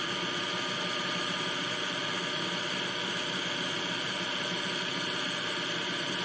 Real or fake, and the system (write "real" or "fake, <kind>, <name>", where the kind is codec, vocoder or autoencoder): real